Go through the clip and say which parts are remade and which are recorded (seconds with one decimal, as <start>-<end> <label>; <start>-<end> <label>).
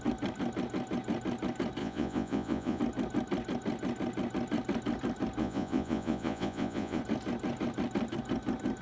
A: 0.0-1.8 recorded; 1.8-2.8 remade; 2.8-5.4 recorded; 5.4-7.0 remade; 7.0-8.8 recorded